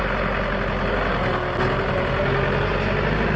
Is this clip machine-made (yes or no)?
no